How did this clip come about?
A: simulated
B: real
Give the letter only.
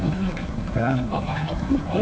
A